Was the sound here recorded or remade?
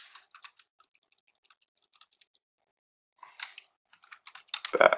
recorded